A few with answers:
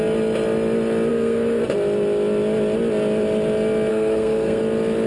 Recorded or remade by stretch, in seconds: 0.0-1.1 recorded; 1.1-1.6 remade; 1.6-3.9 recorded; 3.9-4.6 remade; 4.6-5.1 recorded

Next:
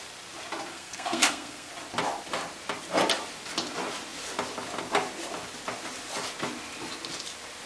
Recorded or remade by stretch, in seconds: 0.0-0.7 recorded; 0.7-1.7 remade; 1.7-7.7 recorded

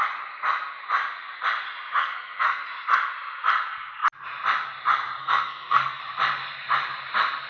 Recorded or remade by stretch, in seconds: 0.0-2.0 recorded; 2.0-2.6 remade; 2.6-5.2 recorded; 5.2-6.0 remade; 6.0-7.5 recorded

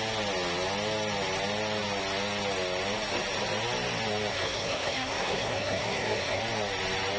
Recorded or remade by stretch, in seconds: 0.0-4.3 recorded; 4.3-6.4 remade; 6.4-7.2 recorded